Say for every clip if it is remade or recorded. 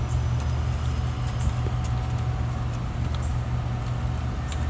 recorded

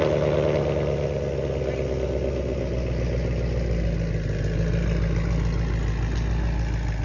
recorded